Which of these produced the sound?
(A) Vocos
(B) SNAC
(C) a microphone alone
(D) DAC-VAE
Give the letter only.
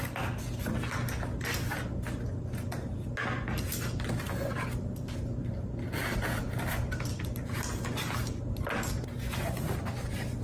C